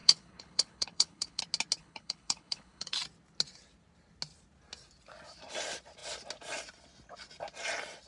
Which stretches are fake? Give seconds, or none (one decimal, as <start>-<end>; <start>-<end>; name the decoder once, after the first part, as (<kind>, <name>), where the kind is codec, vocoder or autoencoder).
0.0-1.4 (codec, HILCodec); 1.8-3.0